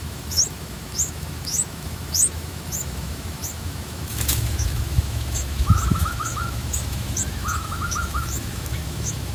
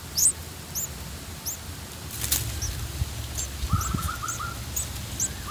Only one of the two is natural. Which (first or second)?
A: second